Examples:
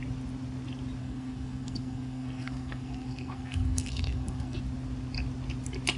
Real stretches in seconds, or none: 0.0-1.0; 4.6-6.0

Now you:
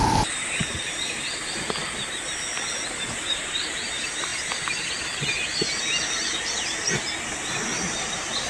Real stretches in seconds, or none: 0.0-8.5

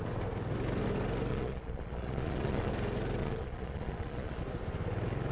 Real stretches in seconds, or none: 0.0-1.3; 2.7-3.2; 4.4-5.3

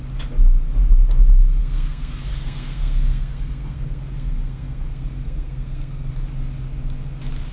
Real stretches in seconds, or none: 0.0-1.6; 6.1-7.5

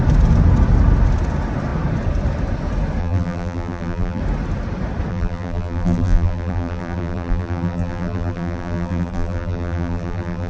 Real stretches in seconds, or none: 0.0-3.0; 4.2-5.1

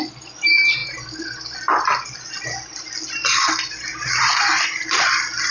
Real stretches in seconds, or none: 0.8-4.1

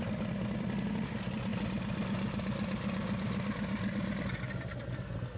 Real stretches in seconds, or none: 0.0-5.4

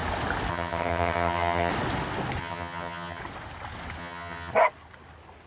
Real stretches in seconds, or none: 0.0-0.5; 1.7-2.4; 3.2-4.0; 4.5-5.5